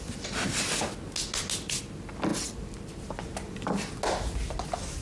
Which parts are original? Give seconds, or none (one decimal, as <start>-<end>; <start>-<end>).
0.0-5.0